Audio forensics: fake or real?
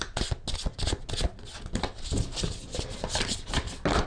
real